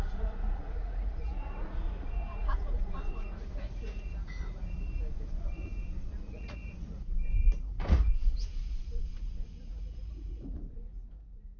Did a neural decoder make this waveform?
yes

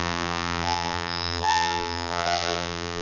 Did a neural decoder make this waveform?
yes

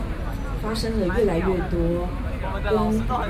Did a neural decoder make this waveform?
no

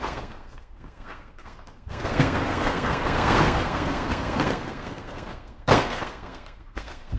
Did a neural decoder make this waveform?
yes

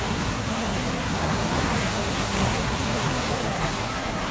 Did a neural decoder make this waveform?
yes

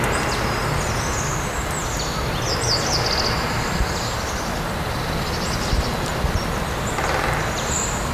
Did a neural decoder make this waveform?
no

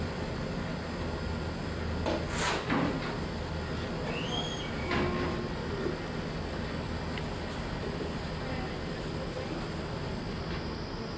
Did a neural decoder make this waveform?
no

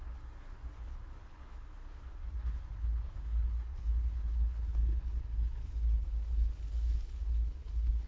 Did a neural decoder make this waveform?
yes